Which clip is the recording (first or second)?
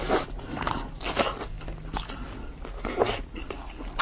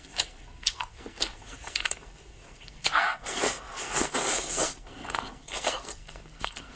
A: first